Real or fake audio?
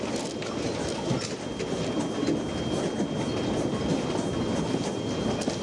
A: real